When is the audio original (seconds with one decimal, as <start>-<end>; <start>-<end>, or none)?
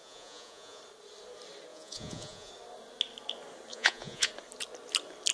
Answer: 0.8-1.7; 2.5-3.7; 4.3-5.3